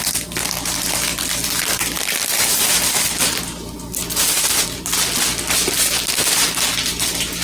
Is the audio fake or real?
real